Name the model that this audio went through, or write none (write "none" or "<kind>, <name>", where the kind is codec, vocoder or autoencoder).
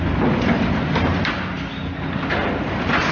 none